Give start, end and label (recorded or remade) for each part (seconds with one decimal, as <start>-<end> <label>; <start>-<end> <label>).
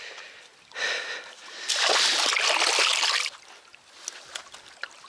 0.0-5.1 recorded